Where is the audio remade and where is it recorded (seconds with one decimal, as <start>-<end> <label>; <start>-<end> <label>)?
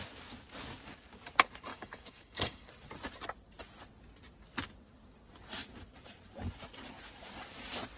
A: 0.0-1.7 recorded; 1.7-2.7 remade; 2.7-8.0 recorded